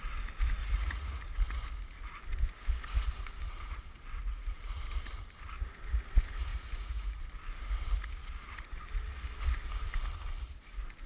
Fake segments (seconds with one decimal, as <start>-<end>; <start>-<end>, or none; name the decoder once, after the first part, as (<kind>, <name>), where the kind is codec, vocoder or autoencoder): 0.6-1.2 (vocoder, Vocos); 4.2-4.8; 6.5-7.2